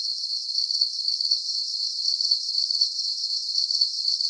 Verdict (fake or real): real